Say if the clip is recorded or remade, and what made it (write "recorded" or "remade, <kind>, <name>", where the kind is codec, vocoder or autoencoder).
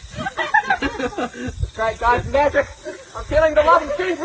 recorded